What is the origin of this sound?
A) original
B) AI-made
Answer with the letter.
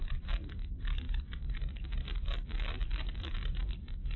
B